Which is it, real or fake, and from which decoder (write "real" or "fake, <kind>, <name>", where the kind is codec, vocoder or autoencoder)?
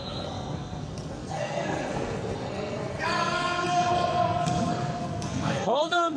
fake, codec, SNAC